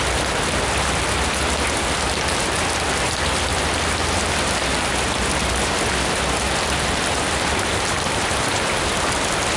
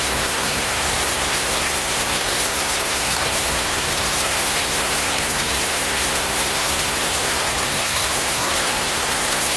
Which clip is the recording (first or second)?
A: first